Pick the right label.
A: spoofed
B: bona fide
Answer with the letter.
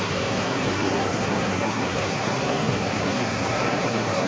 A